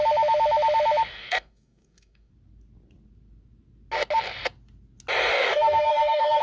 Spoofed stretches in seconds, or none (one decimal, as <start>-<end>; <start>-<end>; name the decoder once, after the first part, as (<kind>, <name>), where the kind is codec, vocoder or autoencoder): 1.1-2.3 (codec, DAC); 5.3-6.4